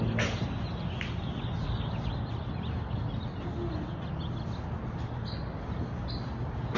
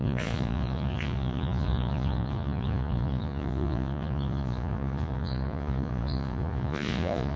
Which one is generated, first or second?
second